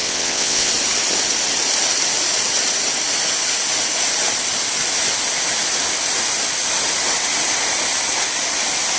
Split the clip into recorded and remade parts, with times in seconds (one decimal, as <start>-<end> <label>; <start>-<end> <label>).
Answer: 0.0-0.7 remade; 0.7-9.0 recorded